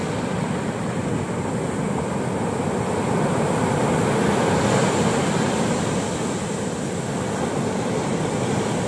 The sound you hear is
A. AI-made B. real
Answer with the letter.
B